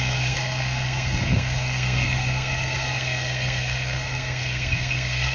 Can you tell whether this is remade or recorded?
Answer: remade